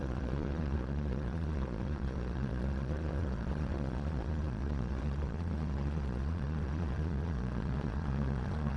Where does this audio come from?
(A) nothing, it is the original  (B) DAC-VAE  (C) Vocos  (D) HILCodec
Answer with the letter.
C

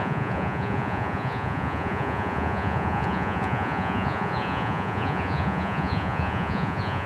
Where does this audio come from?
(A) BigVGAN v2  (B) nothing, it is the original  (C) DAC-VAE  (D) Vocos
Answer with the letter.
D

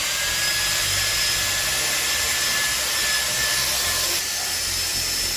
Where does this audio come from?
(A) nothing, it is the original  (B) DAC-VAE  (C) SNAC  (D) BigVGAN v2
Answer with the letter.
A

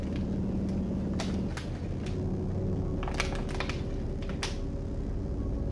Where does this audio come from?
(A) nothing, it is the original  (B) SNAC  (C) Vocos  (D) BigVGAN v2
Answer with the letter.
A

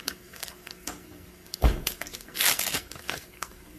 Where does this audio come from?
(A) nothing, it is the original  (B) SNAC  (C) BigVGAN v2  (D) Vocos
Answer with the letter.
B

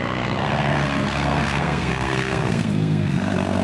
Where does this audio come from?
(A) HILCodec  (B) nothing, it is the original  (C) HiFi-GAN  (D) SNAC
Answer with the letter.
D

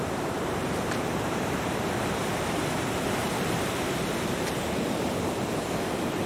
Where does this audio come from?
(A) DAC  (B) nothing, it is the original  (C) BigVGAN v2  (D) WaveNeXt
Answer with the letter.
C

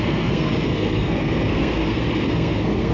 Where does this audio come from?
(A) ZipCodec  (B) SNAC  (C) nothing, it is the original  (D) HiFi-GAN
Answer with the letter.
B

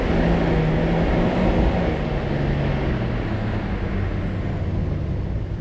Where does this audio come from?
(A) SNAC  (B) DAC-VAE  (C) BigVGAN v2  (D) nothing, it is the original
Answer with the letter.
D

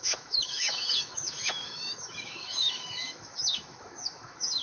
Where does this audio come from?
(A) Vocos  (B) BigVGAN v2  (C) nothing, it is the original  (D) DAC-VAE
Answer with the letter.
D